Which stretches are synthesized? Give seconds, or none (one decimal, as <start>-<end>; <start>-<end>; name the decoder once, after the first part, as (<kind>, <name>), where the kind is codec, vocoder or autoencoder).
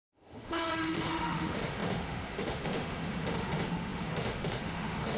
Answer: 0.0-5.2 (autoencoder, DAC-VAE)